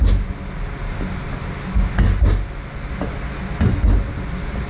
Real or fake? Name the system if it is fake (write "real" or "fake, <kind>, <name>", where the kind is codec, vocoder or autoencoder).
real